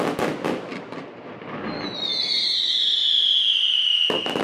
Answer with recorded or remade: recorded